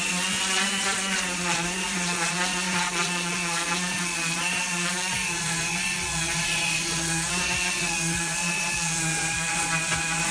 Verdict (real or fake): fake